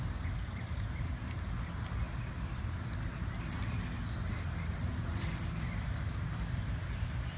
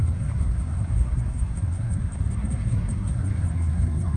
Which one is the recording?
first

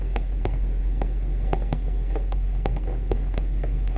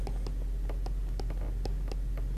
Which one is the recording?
second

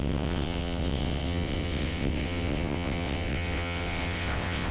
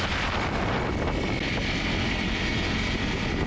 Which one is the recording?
second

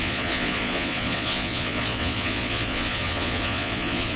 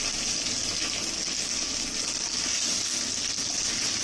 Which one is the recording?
second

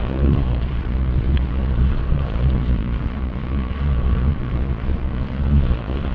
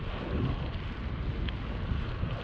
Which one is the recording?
second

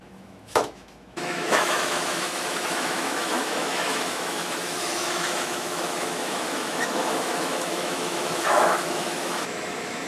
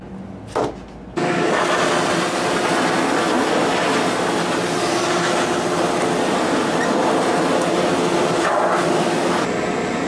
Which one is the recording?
second